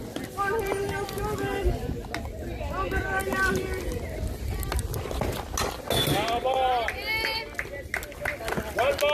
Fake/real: real